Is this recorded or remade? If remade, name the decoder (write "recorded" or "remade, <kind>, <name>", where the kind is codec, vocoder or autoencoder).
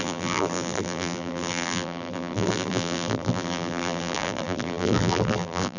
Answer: remade, vocoder, BigVGAN v2